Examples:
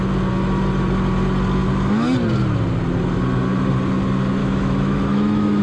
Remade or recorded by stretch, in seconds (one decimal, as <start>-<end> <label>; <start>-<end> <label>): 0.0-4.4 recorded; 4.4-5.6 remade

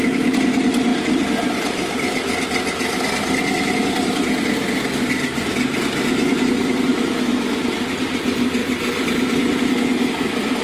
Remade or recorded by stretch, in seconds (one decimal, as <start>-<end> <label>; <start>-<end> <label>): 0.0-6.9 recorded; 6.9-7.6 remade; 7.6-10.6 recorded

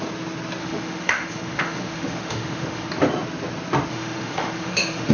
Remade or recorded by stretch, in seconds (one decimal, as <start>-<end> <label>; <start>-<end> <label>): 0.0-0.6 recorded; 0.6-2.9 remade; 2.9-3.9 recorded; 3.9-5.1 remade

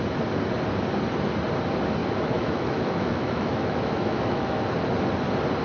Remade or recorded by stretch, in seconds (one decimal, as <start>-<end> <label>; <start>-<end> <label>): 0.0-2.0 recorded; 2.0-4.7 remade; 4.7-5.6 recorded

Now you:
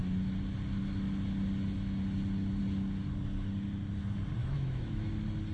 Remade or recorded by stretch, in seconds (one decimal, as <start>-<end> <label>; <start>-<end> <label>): 0.0-4.4 recorded; 4.4-5.1 remade; 5.1-5.5 recorded

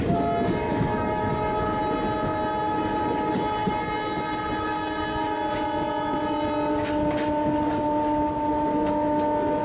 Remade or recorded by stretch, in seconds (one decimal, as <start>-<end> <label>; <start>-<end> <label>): 0.0-0.6 recorded; 0.6-1.3 remade; 1.3-9.6 recorded

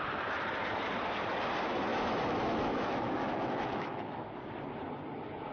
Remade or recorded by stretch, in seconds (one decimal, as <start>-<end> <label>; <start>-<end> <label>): 0.0-1.9 recorded; 1.9-4.3 remade; 4.3-5.5 recorded